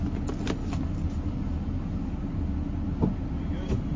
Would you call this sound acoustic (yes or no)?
yes